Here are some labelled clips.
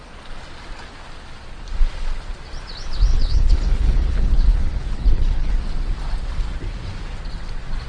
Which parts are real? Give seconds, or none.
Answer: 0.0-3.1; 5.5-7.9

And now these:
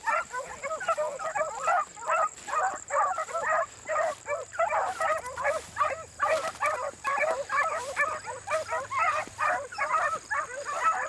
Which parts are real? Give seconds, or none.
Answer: none

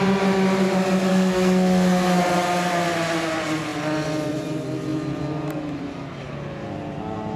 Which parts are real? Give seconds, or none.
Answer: 0.0-1.1; 2.2-7.4

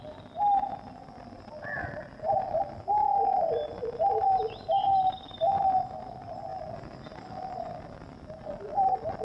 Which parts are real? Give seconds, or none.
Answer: 0.0-9.2

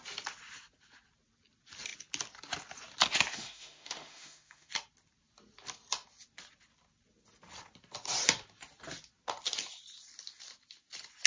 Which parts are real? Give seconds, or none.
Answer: 0.0-3.3; 4.7-11.3